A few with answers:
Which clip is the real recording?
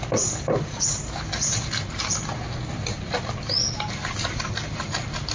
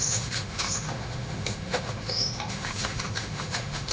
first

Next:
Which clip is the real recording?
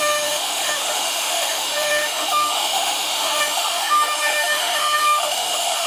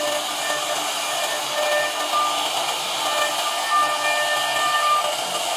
second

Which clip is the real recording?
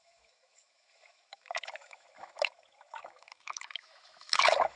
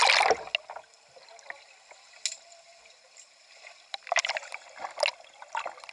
second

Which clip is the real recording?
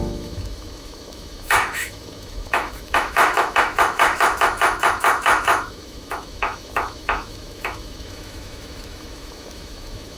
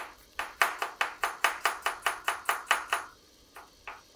second